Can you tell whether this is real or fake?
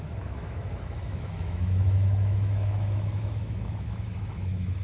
fake